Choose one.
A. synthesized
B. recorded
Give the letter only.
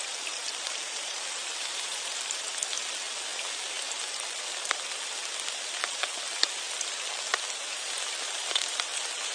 B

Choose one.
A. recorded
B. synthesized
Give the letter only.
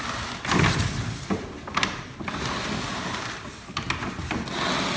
A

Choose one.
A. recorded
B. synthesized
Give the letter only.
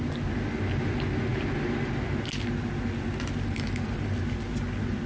A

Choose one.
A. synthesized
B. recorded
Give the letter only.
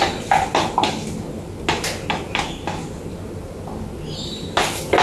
B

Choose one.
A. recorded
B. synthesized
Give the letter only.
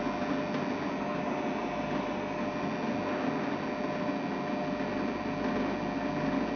A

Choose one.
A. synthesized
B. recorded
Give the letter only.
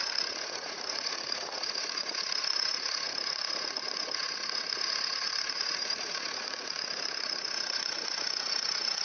A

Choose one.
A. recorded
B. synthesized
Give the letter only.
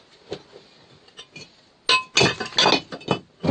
A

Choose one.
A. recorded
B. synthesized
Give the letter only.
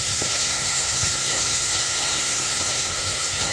B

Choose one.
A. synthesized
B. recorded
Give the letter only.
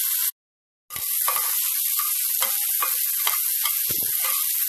B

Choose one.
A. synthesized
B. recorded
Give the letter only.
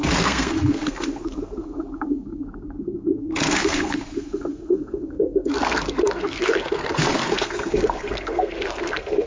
A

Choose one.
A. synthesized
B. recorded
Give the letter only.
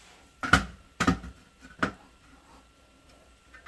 A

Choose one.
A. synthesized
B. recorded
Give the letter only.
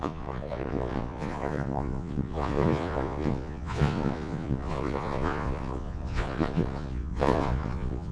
A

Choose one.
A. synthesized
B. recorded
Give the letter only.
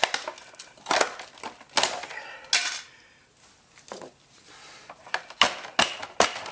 B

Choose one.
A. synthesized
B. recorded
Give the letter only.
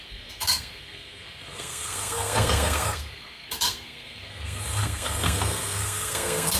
A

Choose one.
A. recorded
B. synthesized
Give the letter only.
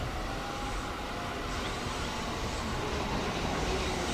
A